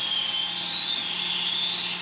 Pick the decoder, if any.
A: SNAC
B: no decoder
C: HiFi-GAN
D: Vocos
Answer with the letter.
B